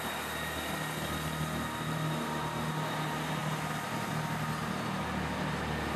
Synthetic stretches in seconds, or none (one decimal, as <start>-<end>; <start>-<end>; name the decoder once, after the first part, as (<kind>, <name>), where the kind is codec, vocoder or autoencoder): none